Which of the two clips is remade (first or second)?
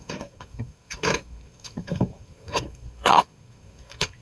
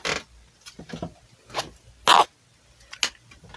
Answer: first